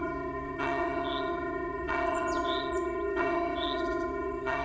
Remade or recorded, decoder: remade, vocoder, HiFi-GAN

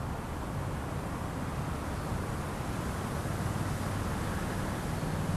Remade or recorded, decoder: recorded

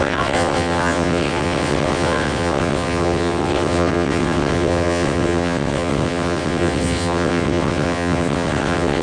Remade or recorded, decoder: remade, vocoder, WaveNeXt